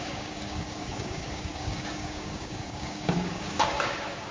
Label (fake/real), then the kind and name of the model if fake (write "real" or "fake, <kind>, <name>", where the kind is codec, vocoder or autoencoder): fake, codec, DAC